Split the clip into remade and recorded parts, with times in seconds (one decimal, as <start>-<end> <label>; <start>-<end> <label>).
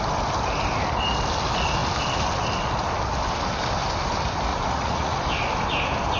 0.0-4.5 recorded; 4.5-5.2 remade; 5.2-6.2 recorded